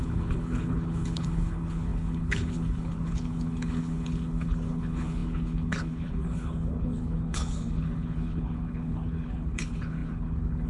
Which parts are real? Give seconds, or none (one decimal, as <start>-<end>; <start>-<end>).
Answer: none